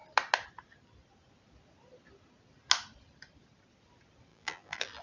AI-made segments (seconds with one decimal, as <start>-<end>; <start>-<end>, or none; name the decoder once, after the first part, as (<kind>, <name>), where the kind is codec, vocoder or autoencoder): 4.3-5.0 (vocoder, BigVGAN v2)